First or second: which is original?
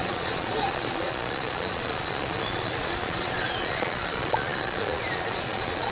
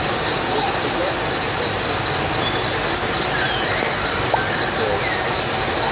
second